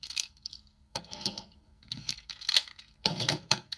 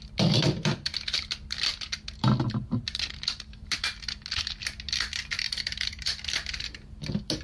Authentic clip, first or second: second